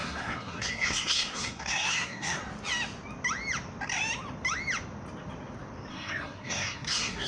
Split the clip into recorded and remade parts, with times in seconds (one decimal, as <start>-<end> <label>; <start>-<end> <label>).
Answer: 0.0-2.4 remade; 2.4-5.9 recorded; 5.9-7.3 remade